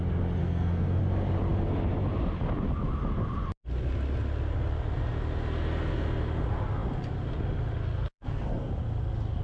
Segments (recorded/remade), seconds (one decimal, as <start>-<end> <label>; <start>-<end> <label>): 0.0-0.4 recorded; 0.4-1.0 remade; 1.0-8.1 recorded; 8.1-8.7 remade; 8.7-9.4 recorded